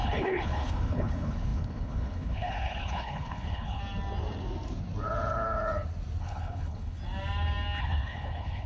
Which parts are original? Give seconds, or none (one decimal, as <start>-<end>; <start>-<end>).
3.8-6.2; 7.0-7.8